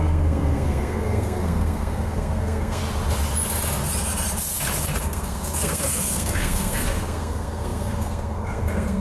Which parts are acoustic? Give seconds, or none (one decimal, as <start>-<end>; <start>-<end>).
2.8-5.0